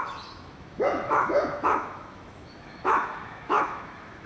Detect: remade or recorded remade